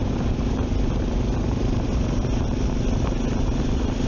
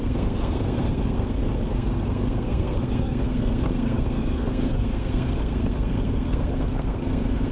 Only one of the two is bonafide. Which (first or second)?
first